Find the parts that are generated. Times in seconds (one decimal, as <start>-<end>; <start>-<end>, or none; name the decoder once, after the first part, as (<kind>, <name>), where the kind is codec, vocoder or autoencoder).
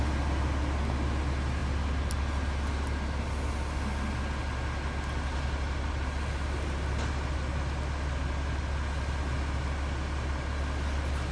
none